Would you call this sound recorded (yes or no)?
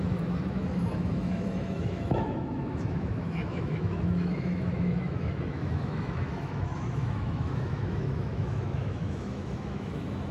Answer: no